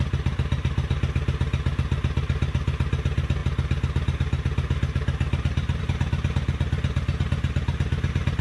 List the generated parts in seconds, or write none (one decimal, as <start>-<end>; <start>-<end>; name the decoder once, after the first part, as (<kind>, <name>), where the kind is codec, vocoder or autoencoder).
none